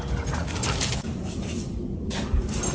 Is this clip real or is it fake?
fake